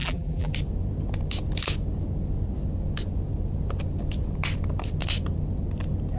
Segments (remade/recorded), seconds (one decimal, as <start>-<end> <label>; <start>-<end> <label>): 0.0-0.5 remade; 0.5-6.2 recorded